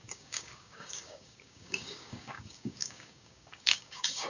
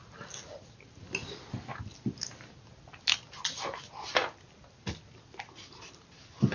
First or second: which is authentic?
second